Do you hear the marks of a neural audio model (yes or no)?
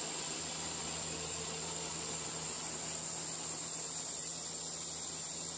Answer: no